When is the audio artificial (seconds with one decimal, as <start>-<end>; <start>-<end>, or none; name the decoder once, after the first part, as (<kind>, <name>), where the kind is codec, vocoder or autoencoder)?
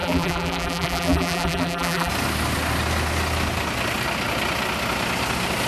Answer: 0.0-2.1 (vocoder, BigVGAN v2)